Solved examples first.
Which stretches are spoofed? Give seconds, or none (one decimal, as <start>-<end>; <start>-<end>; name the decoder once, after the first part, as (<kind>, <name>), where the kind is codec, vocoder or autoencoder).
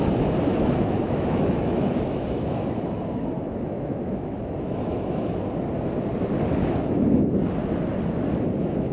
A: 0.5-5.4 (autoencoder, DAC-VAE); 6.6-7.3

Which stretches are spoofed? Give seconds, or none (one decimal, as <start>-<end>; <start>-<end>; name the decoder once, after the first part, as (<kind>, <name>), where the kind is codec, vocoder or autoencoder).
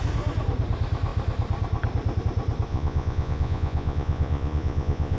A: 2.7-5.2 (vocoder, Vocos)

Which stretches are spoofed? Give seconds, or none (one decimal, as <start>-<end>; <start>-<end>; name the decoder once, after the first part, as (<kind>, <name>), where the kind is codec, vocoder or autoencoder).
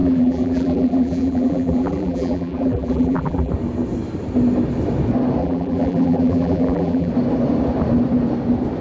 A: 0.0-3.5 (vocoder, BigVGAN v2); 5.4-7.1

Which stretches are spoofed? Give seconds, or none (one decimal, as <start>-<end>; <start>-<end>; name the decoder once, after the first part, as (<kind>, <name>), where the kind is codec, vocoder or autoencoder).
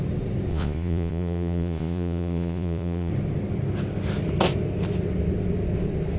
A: 0.5-3.1 (vocoder, Vocos)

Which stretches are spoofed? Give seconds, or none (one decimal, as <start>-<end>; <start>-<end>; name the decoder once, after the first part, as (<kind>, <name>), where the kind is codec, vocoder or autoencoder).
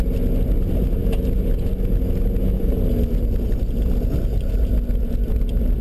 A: none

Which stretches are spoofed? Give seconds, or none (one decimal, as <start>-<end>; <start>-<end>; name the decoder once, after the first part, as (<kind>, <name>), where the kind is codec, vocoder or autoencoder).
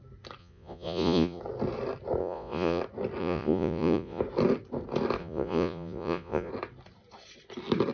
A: 0.4-1.4 (vocoder, Vocos); 2.2-2.8; 3.2-4.2; 5.2-6.5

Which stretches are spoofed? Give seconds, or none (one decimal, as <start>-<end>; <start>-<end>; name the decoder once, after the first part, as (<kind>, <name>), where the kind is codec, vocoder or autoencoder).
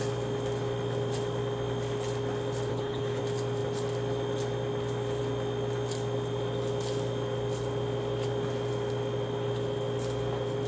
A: 2.7-3.2 (codec, HILCodec)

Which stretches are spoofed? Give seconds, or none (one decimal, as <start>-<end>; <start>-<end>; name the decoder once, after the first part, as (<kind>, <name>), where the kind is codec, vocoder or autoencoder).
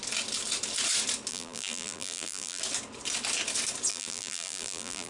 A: 1.3-2.6 (vocoder, BigVGAN v2); 3.9-5.1